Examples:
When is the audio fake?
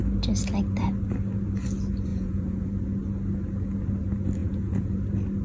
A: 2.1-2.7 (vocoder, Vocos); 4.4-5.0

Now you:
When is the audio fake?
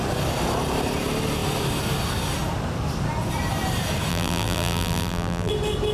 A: 4.1-5.5 (vocoder, BigVGAN v2)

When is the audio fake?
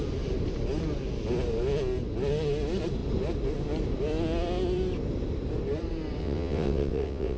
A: 6.2-7.4 (vocoder, WaveNeXt)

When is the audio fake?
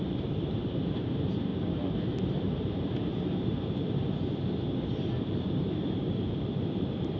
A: 0.0-7.2 (vocoder, BigVGAN v2)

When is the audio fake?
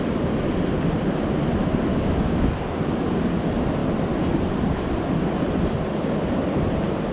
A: 1.9-2.5 (codec, DAC)